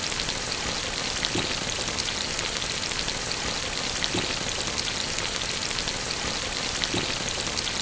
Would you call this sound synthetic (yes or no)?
no